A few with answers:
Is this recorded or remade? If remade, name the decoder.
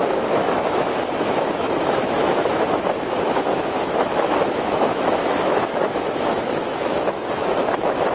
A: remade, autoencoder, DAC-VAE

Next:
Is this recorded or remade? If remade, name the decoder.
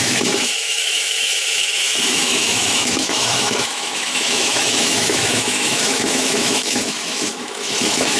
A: remade, autoencoder, DAC-VAE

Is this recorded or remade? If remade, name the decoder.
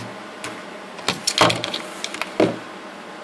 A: recorded